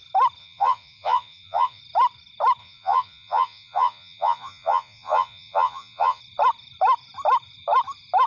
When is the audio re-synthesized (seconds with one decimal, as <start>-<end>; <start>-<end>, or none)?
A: 0.4-1.8; 2.6-6.2